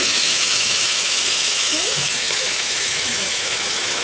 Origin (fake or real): fake